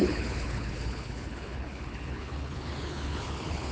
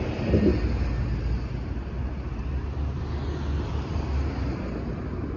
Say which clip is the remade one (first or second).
first